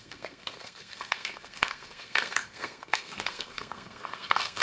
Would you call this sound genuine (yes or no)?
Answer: no